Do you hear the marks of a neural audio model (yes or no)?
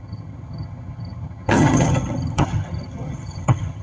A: yes